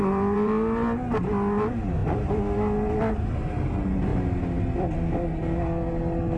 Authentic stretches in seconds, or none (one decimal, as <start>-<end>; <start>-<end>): 0.0-6.4